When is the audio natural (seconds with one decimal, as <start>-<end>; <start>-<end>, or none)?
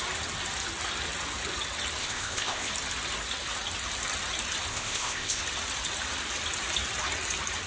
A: 0.0-2.0; 2.7-4.7; 5.4-7.7